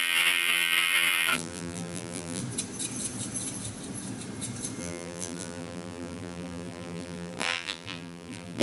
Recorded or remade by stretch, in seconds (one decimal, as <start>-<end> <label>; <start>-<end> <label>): 0.0-2.4 remade; 2.4-4.8 recorded; 4.8-8.6 remade